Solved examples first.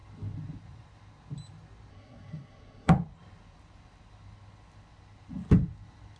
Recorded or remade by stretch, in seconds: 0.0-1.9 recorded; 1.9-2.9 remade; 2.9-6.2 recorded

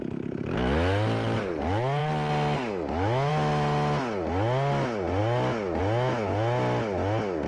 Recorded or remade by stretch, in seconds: 0.0-7.5 recorded

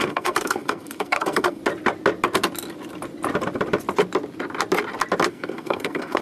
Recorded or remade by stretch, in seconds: 0.0-1.6 remade; 1.6-5.3 recorded; 5.3-6.2 remade